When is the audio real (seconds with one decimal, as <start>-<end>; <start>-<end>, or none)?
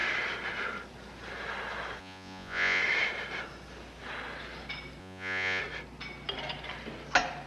0.0-2.0; 2.8-5.0; 5.6-7.5